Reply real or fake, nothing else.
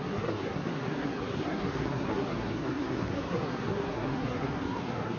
fake